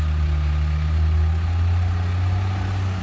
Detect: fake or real real